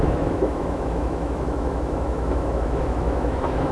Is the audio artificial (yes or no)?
yes